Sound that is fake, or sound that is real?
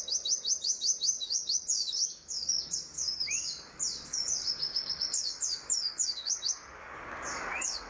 fake